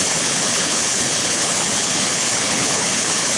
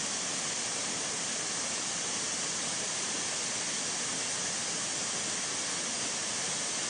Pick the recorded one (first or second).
second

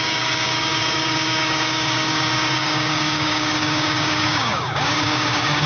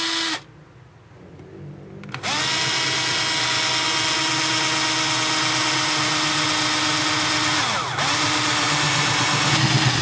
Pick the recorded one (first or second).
second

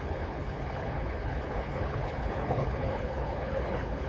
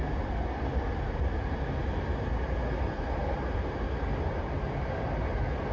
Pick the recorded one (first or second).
second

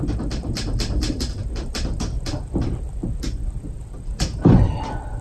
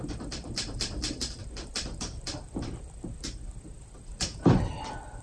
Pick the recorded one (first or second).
first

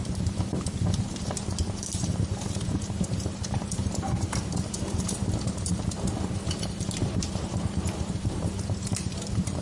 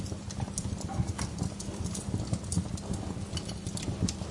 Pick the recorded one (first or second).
second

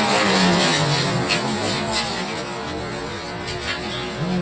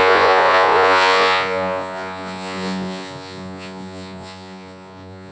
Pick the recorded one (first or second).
first